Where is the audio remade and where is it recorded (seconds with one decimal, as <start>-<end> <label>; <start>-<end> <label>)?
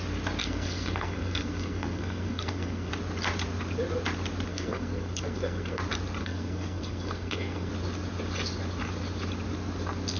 0.0-0.4 recorded; 0.4-2.9 remade; 2.9-4.5 recorded; 4.5-5.8 remade; 5.8-6.2 recorded; 6.2-7.7 remade; 7.7-10.2 recorded